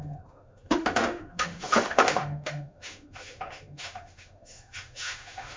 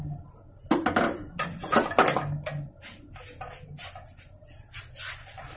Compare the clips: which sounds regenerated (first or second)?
first